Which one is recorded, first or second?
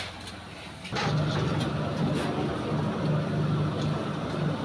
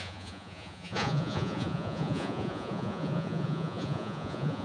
first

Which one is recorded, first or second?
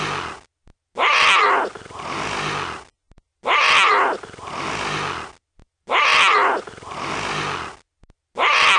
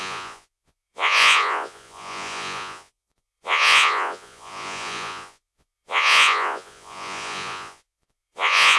first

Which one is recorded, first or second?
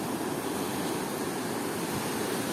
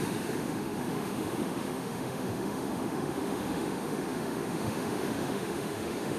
first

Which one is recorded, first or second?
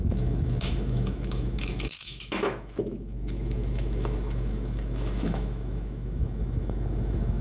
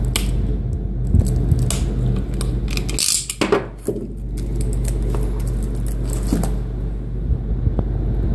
second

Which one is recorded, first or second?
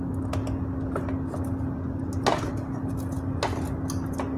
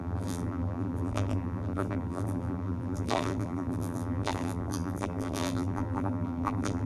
first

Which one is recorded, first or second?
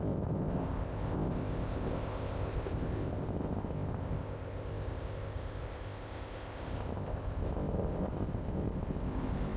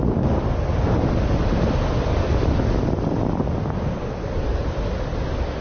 second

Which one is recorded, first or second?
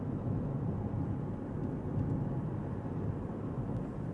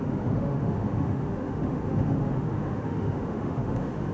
first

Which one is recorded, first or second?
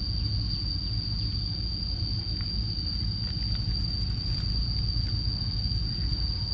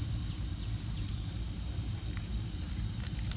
first